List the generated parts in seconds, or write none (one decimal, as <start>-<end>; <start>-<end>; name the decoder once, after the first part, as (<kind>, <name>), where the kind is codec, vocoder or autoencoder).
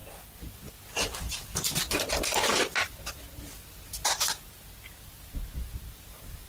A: 2.1-2.5 (vocoder, BigVGAN v2); 6.1-6.5